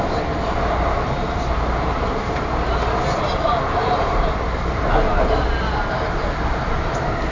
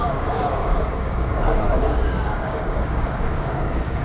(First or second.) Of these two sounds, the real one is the first